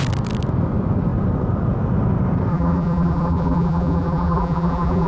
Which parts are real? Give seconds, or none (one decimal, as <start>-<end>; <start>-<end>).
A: 0.0-2.5